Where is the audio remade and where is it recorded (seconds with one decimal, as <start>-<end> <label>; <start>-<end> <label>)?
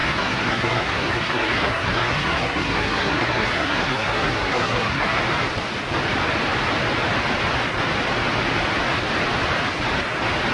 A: 0.0-5.2 remade; 5.2-10.5 recorded